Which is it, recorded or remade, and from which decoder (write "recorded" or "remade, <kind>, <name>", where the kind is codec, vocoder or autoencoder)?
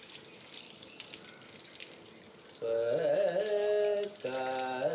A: recorded